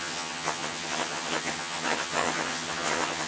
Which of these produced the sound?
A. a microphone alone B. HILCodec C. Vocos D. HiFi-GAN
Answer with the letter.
D